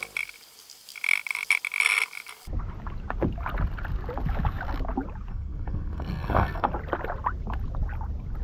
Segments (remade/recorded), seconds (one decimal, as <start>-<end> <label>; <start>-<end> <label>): 0.0-5.3 recorded; 5.3-6.7 remade; 6.7-8.4 recorded